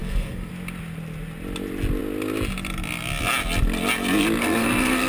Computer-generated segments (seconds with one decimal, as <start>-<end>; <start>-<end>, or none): 0.0-0.5; 4.4-5.1